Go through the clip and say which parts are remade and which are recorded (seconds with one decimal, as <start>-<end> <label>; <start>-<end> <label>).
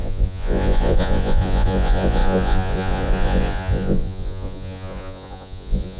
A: 0.0-6.0 remade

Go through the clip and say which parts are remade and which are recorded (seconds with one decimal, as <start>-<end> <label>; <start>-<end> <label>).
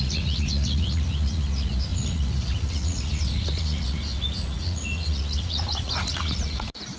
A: 0.0-7.0 remade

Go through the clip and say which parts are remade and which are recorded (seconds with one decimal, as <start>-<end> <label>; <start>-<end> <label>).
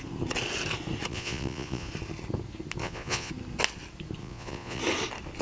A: 0.0-1.1 recorded; 1.1-1.9 remade; 1.9-2.8 recorded; 2.8-3.3 remade; 3.3-4.2 recorded; 4.2-4.8 remade; 4.8-5.4 recorded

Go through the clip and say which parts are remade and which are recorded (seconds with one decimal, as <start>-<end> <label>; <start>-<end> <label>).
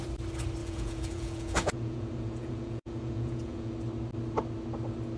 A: 0.0-0.6 recorded; 0.6-3.7 remade; 3.7-5.2 recorded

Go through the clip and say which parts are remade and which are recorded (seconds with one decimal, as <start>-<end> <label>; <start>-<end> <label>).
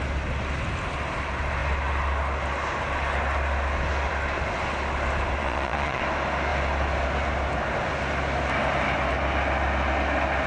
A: 0.0-5.4 recorded; 5.4-6.0 remade; 6.0-10.5 recorded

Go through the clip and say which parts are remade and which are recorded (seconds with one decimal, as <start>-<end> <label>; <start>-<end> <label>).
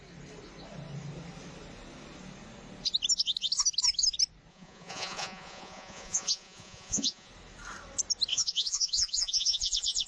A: 0.0-4.5 recorded; 4.5-7.3 remade; 7.3-8.3 recorded; 8.3-10.1 remade